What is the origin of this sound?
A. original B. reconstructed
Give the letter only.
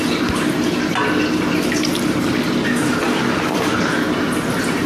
A